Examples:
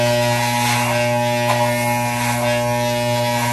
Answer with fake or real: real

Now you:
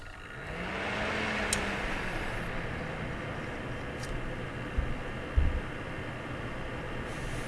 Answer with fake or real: real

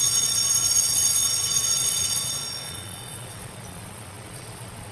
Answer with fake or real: fake